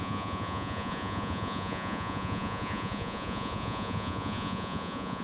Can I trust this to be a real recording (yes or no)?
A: no